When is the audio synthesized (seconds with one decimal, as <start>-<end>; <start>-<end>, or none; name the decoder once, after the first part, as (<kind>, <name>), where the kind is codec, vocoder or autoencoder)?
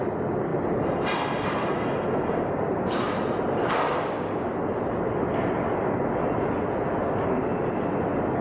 0.5-3.9 (vocoder, BigVGAN v2)